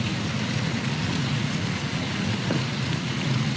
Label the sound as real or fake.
fake